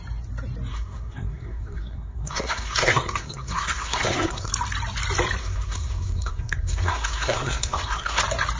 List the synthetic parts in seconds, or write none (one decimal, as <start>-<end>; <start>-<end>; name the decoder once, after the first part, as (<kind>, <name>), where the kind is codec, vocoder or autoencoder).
0.7-4.5 (codec, SNAC); 5.4-8.2